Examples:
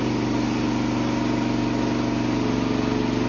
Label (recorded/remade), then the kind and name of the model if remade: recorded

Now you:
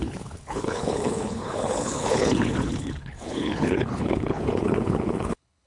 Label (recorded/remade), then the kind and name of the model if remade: remade, codec, HILCodec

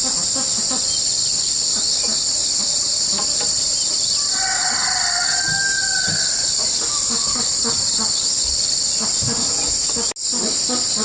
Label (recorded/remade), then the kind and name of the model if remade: recorded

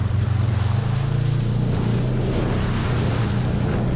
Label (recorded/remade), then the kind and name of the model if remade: recorded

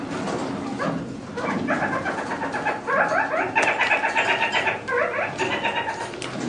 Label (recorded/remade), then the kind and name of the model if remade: recorded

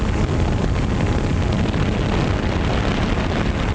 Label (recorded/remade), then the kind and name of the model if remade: recorded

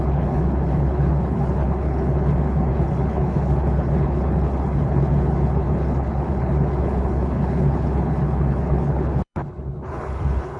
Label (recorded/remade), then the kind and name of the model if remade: remade, codec, HILCodec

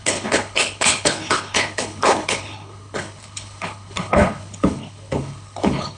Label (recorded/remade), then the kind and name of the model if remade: remade, codec, HILCodec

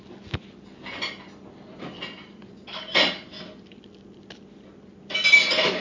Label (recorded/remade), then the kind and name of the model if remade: recorded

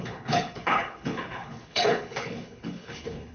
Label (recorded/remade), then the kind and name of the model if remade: remade, codec, HILCodec